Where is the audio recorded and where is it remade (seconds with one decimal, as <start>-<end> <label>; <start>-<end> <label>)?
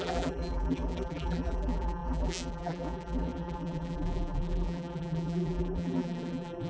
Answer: 0.0-6.7 remade